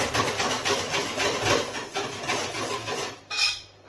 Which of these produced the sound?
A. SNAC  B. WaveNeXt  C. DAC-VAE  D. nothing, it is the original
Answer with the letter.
D